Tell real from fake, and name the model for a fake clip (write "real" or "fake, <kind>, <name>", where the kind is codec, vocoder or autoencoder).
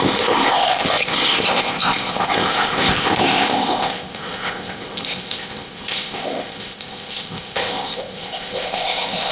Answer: fake, codec, ZipCodec